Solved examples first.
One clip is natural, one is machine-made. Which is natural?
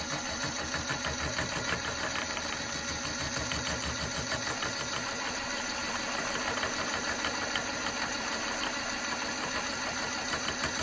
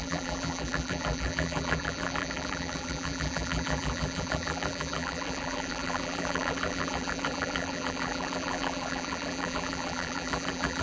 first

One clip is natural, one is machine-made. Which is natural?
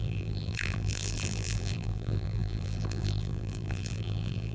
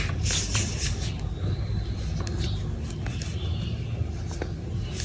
second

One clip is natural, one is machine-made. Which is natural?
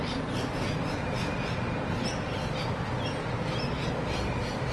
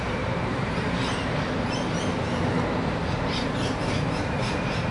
first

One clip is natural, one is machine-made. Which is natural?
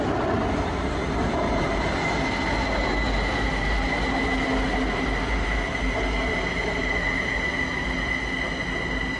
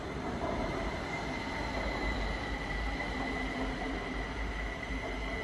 first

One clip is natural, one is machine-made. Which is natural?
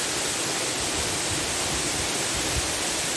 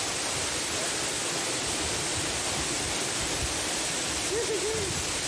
first